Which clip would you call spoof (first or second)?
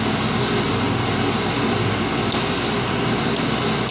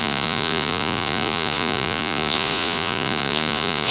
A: second